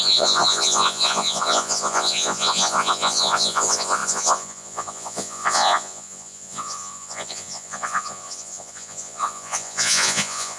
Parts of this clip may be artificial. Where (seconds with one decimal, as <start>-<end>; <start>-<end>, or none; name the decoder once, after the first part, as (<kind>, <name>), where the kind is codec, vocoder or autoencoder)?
0.0-10.6 (vocoder, Vocos)